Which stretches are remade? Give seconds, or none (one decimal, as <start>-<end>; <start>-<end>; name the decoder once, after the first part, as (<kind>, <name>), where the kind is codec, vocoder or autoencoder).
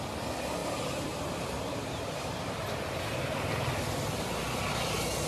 0.6-3.8 (vocoder, BigVGAN v2)